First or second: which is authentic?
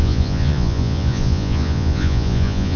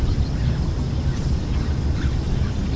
second